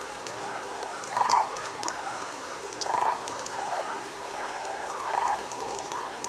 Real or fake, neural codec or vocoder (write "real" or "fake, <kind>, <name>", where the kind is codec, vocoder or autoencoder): fake, codec, SNAC